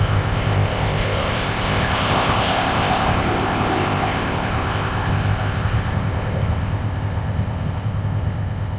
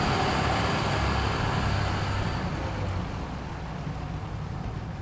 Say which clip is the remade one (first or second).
first